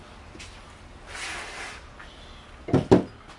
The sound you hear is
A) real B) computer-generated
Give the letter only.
A